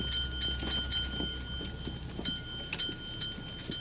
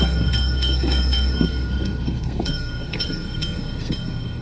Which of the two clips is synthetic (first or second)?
second